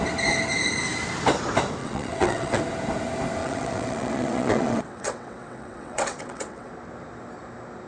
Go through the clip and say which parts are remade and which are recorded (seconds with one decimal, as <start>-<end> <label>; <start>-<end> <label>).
0.0-1.8 recorded; 1.8-2.6 remade; 2.6-3.4 recorded; 3.4-6.7 remade; 6.7-7.9 recorded

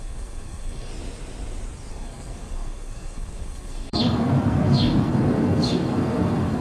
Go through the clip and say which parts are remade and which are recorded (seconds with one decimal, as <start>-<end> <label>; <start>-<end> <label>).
0.0-0.9 remade; 0.9-1.9 recorded; 1.9-6.6 remade

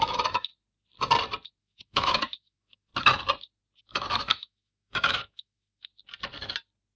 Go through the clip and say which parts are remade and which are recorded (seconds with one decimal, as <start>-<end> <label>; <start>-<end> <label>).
0.0-0.5 remade; 0.5-1.6 recorded; 1.6-2.9 remade; 2.9-3.8 recorded; 3.8-5.9 remade; 5.9-7.0 recorded

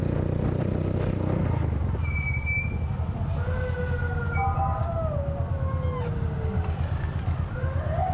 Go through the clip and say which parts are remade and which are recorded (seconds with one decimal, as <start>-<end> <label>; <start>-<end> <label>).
0.0-8.1 recorded

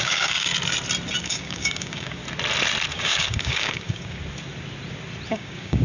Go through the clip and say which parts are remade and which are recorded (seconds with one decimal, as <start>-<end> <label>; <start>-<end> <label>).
0.0-0.5 remade; 0.5-1.2 recorded; 1.2-2.2 remade; 2.2-2.9 recorded; 2.9-4.2 remade; 4.2-5.3 recorded; 5.3-5.8 remade

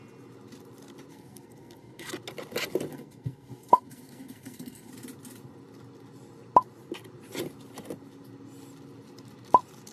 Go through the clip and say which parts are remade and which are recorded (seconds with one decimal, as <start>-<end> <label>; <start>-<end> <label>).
0.0-1.1 recorded; 1.1-2.1 remade; 2.1-2.9 recorded; 2.9-4.9 remade; 4.9-9.9 recorded

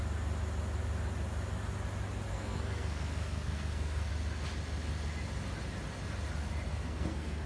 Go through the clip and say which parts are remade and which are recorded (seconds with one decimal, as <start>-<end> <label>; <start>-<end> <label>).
0.0-2.3 recorded; 2.3-4.1 remade; 4.1-6.7 recorded; 6.7-7.5 remade